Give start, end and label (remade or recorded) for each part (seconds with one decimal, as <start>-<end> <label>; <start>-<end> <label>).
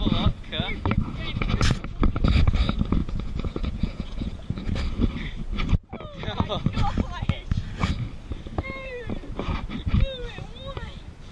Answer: 0.0-3.0 recorded; 3.0-4.7 remade; 4.7-11.3 recorded